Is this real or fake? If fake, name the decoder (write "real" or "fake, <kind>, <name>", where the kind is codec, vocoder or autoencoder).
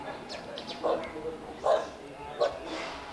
real